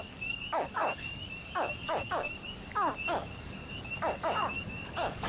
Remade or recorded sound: remade